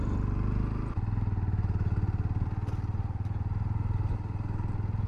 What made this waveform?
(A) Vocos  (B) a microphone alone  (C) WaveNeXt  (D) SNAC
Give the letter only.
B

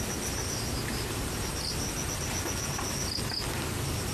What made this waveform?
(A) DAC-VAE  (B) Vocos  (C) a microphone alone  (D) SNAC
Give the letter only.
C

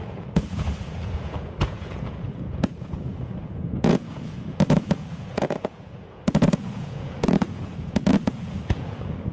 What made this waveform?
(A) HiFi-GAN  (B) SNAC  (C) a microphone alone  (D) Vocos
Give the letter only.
D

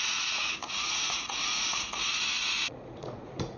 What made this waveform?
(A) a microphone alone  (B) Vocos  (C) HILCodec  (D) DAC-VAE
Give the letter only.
B